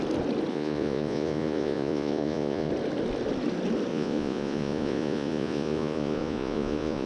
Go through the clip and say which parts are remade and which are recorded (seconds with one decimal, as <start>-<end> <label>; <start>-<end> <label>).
0.0-0.5 recorded; 0.5-2.7 remade; 2.7-3.9 recorded; 3.9-7.1 remade